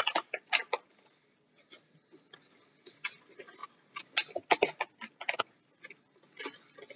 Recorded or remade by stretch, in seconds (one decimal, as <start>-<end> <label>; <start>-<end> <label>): 0.0-7.0 recorded